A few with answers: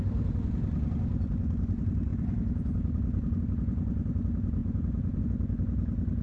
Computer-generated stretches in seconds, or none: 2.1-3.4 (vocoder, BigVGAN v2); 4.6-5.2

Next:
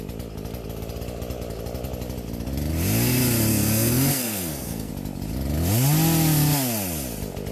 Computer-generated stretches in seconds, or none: 3.5-4.9 (codec, SNAC)

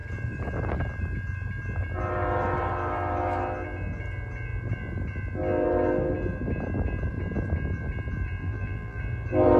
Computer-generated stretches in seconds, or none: 8.4-9.0 (vocoder, BigVGAN v2)

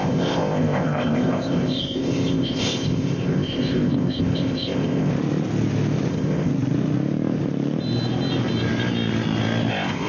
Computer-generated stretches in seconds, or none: 0.0-5.1 (codec, ZipCodec); 6.1-6.5; 9.7-10.1